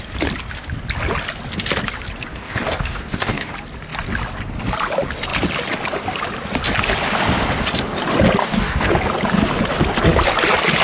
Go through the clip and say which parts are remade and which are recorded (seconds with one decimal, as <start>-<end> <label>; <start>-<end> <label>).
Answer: 0.0-2.3 recorded; 2.3-3.5 remade; 3.5-8.4 recorded; 8.4-8.9 remade; 8.9-10.8 recorded